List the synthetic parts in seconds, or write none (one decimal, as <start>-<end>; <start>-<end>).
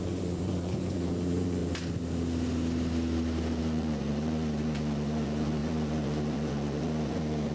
0.0-1.6; 3.6-7.5